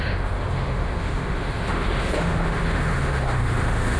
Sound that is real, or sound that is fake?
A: fake